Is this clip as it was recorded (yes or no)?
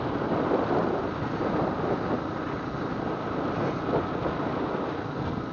yes